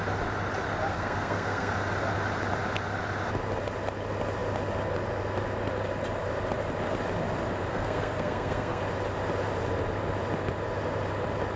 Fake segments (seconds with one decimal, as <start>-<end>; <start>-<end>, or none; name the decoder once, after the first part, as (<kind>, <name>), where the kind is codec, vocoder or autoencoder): 0.9-1.7 (codec, SNAC); 7.7-8.8